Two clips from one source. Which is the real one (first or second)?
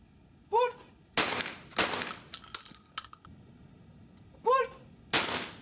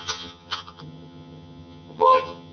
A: first